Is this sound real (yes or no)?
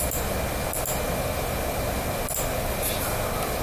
yes